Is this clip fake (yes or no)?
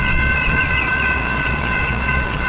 yes